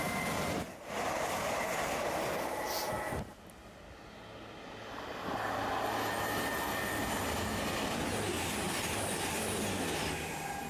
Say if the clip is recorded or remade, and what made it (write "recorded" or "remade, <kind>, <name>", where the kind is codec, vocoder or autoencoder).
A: recorded